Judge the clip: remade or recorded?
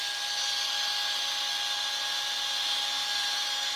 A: recorded